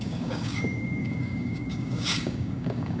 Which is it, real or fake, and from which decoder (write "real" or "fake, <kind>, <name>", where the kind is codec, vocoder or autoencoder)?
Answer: fake, codec, DAC